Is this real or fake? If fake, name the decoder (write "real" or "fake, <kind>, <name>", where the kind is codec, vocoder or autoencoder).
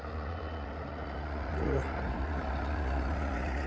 fake, vocoder, Vocos